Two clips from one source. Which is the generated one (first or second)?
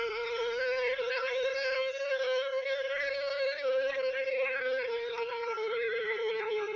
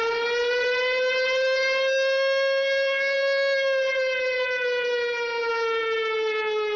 first